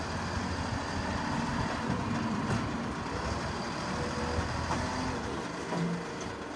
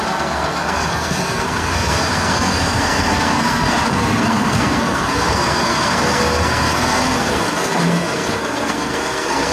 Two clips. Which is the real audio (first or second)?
first